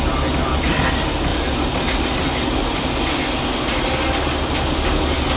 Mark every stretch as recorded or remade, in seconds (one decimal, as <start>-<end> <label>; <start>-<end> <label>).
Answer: 0.0-5.4 recorded